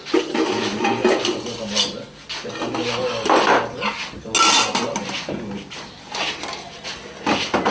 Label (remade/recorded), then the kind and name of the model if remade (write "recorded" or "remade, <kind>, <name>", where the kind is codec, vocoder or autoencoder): recorded